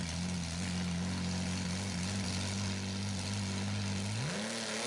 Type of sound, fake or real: real